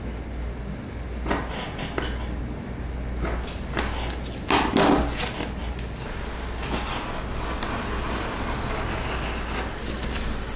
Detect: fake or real real